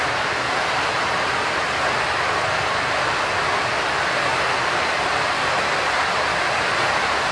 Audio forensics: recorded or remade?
recorded